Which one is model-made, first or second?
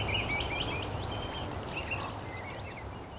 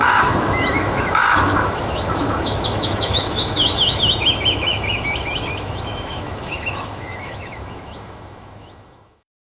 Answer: second